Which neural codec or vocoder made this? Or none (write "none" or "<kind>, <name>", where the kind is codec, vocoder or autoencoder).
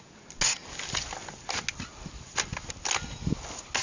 none